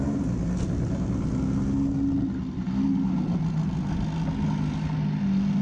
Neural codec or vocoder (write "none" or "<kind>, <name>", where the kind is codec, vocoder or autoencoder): none